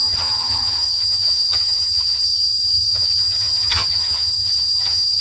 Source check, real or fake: fake